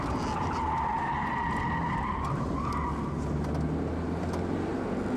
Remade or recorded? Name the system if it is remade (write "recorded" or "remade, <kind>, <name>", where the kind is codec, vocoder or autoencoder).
recorded